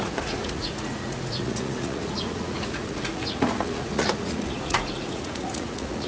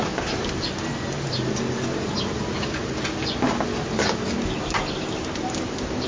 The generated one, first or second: first